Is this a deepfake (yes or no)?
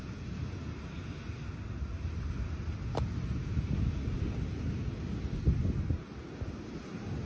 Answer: no